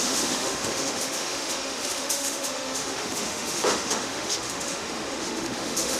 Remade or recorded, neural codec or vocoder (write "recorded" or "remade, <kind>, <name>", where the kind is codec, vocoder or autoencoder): remade, autoencoder, DAC-VAE